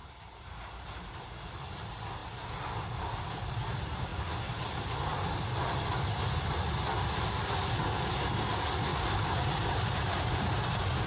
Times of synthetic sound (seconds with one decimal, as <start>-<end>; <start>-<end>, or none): 0.0-1.1; 8.9-10.4